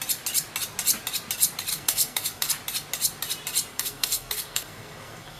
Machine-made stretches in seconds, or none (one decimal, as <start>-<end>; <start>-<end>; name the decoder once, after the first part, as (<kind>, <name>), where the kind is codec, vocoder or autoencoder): 1.7-2.5 (codec, SNAC); 3.7-5.4